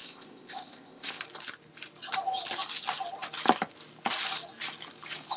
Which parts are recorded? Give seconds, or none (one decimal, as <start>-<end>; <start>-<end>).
1.2-5.4